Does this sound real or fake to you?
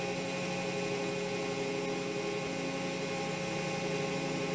real